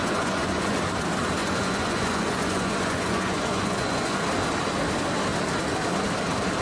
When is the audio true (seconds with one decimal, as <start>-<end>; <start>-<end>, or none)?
0.8-1.4; 4.2-6.6